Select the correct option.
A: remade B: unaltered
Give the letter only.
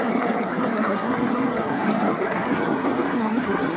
A